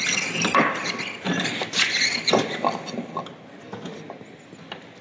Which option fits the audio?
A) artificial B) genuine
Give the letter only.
B